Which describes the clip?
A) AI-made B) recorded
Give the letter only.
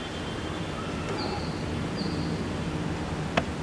B